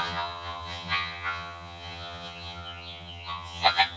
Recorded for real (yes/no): no